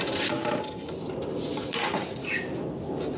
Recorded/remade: recorded